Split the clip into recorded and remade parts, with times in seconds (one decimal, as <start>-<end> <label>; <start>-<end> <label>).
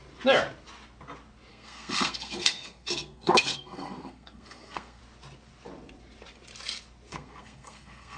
0.0-1.5 recorded; 1.5-5.0 remade; 5.0-7.1 recorded; 7.1-8.2 remade